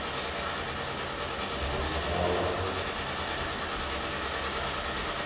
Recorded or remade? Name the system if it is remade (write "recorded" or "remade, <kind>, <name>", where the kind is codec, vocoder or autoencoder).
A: recorded